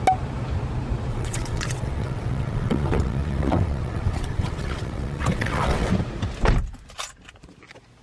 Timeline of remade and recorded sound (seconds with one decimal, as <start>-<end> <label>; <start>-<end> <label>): 0.0-1.1 recorded; 1.1-5.9 remade; 5.9-8.0 recorded